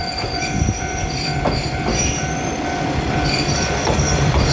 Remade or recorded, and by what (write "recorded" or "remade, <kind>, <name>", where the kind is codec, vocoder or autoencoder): remade, vocoder, BigVGAN v2